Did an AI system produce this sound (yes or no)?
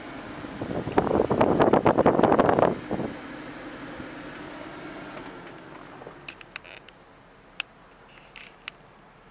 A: no